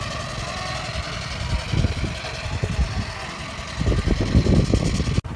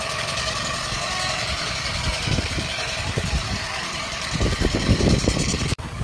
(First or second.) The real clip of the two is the first